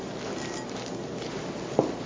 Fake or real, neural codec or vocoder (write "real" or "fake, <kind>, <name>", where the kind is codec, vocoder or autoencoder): real